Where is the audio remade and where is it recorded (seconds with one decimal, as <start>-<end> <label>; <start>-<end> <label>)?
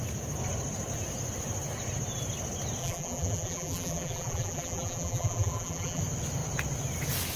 0.0-2.8 recorded; 2.8-6.0 remade; 6.0-7.4 recorded